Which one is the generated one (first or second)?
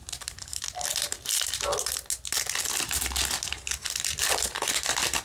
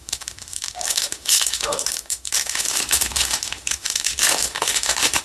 second